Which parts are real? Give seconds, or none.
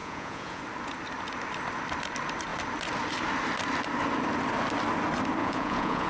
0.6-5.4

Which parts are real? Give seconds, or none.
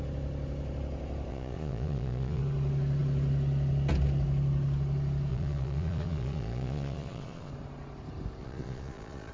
0.0-1.3; 2.4-5.3; 7.5-8.4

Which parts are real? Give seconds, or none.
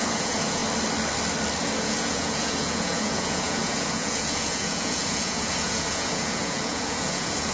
0.6-1.8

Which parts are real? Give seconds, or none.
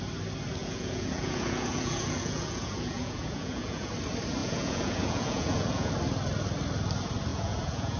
0.0-0.6; 3.9-4.4; 5.9-7.3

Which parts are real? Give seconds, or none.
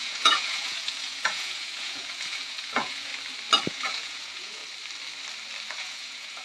3.1-3.7; 4.6-5.7